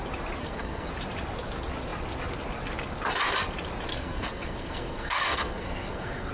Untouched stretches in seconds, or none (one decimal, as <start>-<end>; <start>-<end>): 0.0-0.4; 0.9-3.9